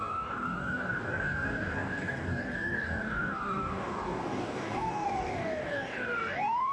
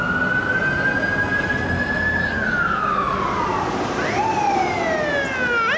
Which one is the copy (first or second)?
first